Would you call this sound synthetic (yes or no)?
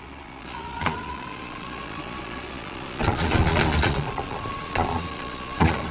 yes